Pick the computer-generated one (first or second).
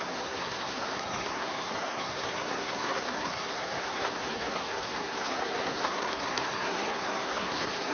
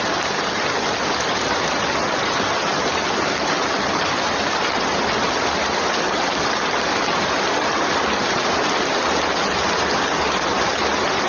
first